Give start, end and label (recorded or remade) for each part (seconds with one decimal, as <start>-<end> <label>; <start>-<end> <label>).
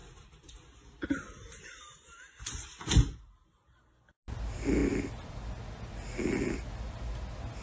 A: 0.0-7.6 recorded